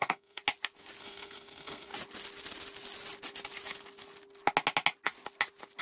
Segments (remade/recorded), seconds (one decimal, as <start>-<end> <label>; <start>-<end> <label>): 0.0-0.4 remade; 0.4-1.0 recorded; 1.0-1.9 remade; 1.9-5.8 recorded